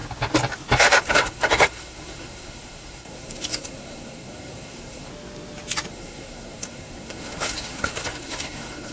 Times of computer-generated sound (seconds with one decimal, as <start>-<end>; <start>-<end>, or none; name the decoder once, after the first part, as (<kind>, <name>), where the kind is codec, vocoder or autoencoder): 1.0-5.1 (codec, SNAC); 5.9-8.9

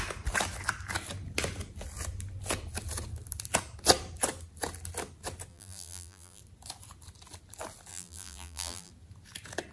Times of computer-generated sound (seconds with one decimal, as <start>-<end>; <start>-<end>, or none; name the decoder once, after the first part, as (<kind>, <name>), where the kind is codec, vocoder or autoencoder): 5.5-6.4 (vocoder, BigVGAN v2); 7.9-8.9